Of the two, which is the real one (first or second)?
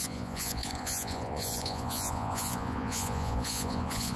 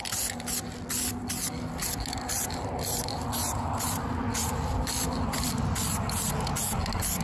second